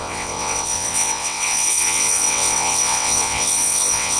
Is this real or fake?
fake